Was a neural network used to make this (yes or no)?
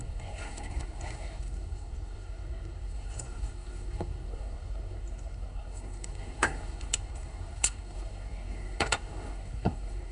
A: yes